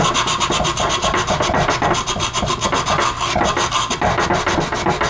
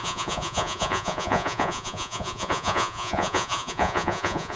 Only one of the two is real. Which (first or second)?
first